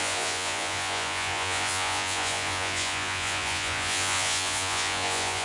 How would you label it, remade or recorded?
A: remade